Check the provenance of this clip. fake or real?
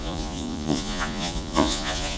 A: fake